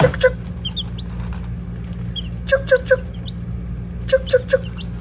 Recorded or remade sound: recorded